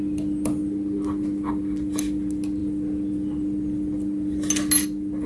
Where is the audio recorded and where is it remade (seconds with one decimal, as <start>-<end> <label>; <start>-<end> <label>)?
0.0-5.3 recorded